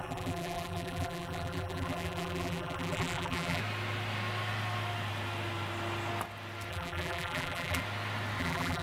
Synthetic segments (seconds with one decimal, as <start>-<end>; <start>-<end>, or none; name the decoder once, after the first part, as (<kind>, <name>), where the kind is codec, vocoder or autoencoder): 0.0-3.6 (vocoder, BigVGAN v2); 6.7-7.8; 8.4-8.8